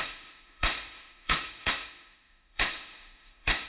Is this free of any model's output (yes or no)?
no